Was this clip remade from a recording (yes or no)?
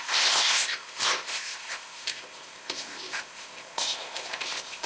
yes